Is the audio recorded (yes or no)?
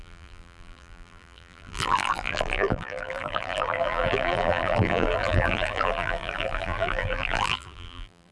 no